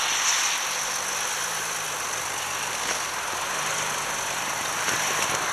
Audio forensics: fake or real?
real